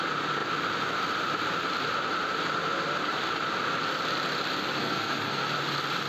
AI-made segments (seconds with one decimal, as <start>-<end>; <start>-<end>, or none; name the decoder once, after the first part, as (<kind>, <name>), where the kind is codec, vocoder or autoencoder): 4.8-5.4 (codec, SNAC)